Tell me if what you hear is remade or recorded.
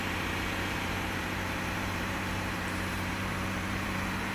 remade